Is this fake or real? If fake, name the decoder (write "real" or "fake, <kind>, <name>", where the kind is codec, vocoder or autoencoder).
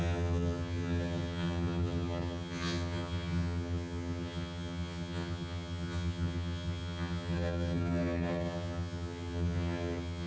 fake, vocoder, HiFi-GAN